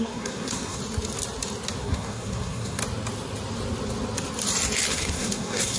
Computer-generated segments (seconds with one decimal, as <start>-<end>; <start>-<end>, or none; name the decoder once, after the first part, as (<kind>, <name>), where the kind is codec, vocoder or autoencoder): 0.0-0.8 (codec, SNAC); 1.8-2.8; 4.9-5.8